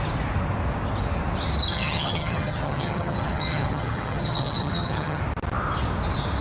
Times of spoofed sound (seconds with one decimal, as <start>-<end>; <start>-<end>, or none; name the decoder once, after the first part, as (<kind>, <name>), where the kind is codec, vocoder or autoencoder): 1.7-5.2 (vocoder, HiFi-GAN)